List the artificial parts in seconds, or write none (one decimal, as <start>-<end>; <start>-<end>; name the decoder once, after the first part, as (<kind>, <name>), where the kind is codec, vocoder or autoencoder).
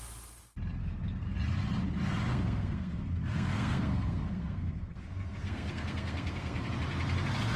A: 0.8-1.3 (codec, SNAC); 2.3-6.7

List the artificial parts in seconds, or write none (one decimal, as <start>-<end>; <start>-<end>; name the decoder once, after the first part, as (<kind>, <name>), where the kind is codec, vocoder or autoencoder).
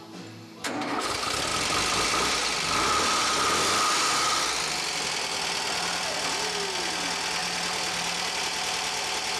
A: none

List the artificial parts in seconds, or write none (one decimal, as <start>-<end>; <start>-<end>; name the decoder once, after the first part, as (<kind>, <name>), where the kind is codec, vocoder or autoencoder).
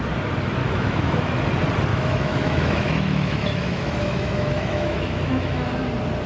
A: 0.6-1.4 (autoencoder, DAC-VAE); 1.9-5.7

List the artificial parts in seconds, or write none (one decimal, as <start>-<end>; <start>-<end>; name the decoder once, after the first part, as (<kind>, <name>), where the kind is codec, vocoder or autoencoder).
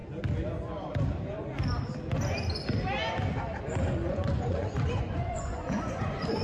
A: 3.8-6.4 (vocoder, Vocos)